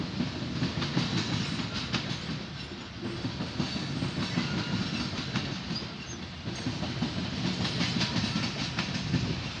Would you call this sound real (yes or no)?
yes